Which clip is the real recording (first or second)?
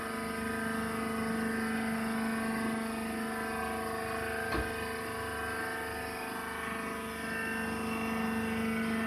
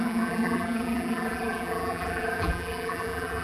first